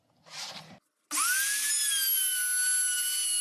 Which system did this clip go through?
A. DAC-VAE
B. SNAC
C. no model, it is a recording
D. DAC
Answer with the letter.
C